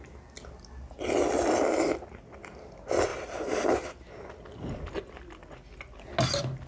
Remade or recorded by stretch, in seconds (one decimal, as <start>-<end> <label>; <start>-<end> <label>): 0.0-6.7 recorded